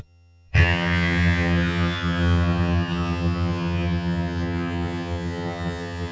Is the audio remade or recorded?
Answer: remade